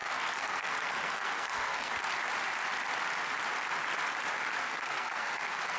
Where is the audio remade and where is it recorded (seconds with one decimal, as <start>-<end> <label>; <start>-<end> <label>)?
0.0-1.9 remade; 1.9-4.6 recorded; 4.6-5.8 remade